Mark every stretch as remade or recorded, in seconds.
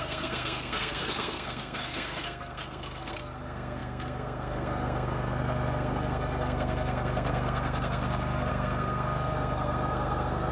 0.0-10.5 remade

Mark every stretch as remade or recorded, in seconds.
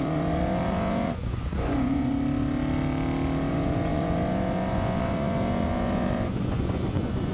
0.0-2.1 remade; 2.1-3.5 recorded; 3.5-7.3 remade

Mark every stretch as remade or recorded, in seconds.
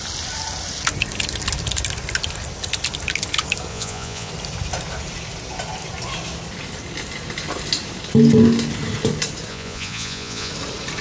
0.0-3.7 recorded; 3.7-4.3 remade; 4.3-9.5 recorded; 9.5-10.5 remade; 10.5-11.0 recorded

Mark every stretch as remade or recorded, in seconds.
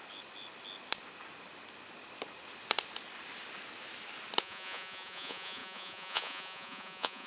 0.0-4.4 recorded; 4.4-7.3 remade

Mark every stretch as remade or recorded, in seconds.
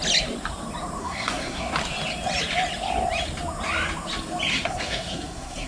0.0-1.0 recorded; 1.0-1.7 remade; 1.7-4.5 recorded; 4.5-5.7 remade